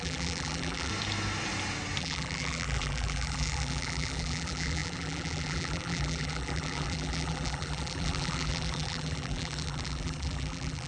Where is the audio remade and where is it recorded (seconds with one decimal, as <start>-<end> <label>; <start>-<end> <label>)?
0.0-0.9 remade; 0.9-2.0 recorded; 2.0-10.9 remade